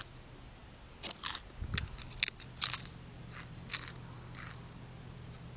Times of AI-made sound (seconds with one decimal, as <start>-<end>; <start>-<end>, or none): none